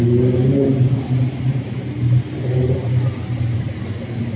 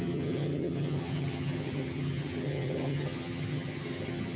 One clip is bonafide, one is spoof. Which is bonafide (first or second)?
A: first